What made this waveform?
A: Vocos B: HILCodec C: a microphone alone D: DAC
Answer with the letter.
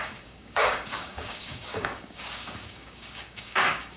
D